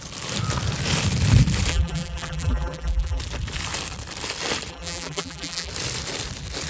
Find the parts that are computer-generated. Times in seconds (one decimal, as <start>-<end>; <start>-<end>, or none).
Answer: 1.7-3.2; 4.7-5.7